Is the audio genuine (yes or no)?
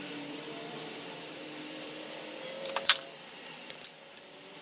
no